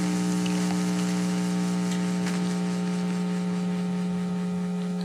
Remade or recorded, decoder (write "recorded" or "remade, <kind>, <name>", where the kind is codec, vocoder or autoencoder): recorded